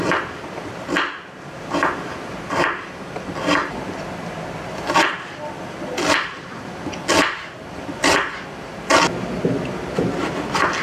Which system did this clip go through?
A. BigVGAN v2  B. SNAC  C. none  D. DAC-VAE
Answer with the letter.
C